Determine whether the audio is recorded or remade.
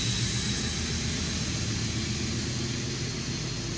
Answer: recorded